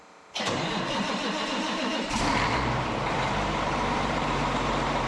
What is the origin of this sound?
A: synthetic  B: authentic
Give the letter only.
A